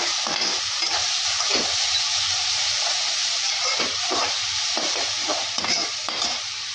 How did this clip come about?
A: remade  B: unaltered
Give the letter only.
A